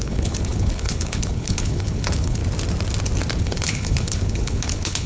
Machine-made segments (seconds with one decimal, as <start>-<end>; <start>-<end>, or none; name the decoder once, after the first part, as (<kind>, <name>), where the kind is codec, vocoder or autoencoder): 0.0-2.4 (codec, HILCodec); 3.4-5.1